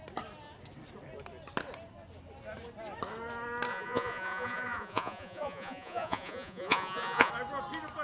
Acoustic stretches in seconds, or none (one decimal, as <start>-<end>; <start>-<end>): 0.0-3.7; 7.3-8.0